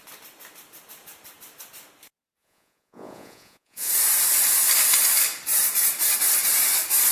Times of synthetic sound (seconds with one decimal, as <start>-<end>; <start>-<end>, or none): 2.4-3.9